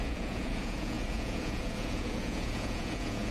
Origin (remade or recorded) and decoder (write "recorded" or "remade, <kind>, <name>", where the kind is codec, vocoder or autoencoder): remade, vocoder, Vocos